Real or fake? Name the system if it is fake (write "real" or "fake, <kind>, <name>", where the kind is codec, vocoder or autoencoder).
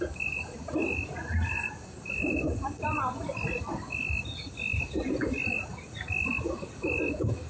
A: real